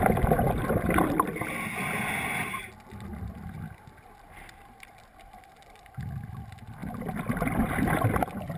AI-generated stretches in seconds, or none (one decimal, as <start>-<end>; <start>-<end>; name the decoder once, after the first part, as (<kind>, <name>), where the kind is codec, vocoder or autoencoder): none